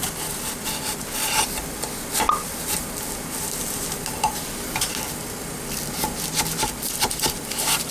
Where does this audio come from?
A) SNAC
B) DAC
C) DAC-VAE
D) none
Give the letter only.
D